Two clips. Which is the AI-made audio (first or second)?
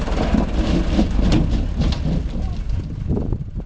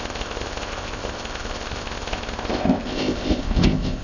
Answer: second